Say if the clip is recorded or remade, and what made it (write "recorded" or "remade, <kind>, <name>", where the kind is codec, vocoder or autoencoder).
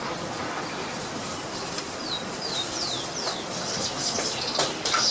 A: recorded